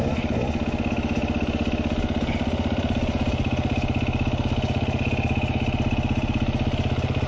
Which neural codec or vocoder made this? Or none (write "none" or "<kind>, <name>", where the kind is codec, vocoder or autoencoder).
none